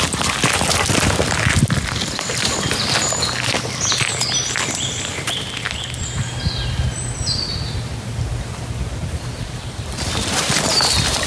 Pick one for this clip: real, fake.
fake